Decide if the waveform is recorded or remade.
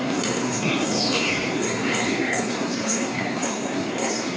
remade